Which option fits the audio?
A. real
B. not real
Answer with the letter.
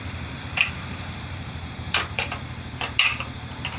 B